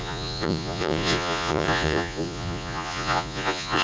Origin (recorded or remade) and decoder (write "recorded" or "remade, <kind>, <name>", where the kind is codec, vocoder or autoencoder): remade, vocoder, Vocos